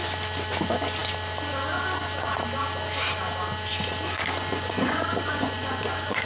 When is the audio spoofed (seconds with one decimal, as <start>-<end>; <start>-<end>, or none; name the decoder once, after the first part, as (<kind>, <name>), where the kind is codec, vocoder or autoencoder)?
4.4-6.3 (vocoder, Vocos)